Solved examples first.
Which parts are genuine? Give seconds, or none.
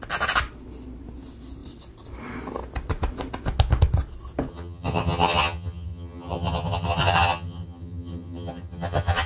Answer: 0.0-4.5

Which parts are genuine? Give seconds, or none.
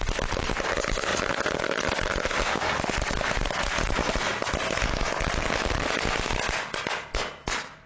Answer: 0.0-7.9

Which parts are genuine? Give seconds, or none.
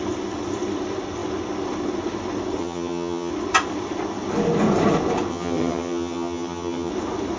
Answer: 0.0-2.6; 3.3-5.3; 6.9-7.4